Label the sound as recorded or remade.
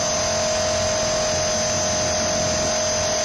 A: recorded